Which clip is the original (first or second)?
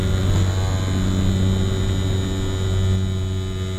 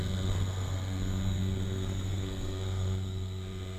first